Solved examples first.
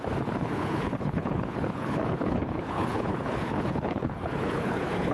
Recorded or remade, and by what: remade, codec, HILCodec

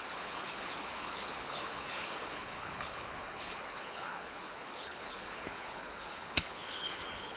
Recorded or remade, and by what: remade, codec, HILCodec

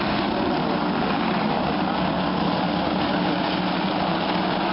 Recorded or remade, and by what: recorded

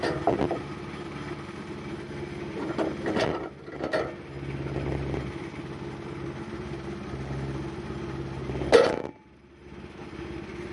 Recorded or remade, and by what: recorded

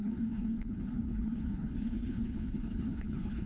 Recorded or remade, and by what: remade, codec, HILCodec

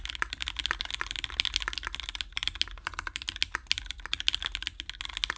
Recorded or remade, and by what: recorded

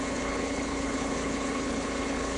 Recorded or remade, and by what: remade, codec, HILCodec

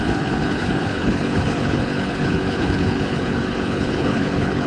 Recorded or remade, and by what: remade, codec, HILCodec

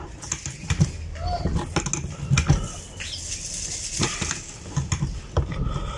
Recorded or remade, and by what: recorded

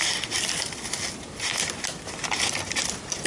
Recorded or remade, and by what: recorded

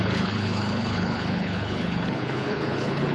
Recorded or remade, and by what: remade, codec, HILCodec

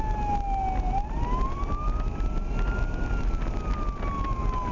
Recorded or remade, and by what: recorded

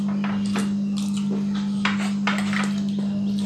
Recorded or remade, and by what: recorded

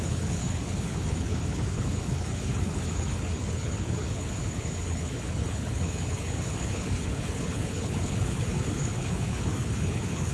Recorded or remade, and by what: remade, codec, HILCodec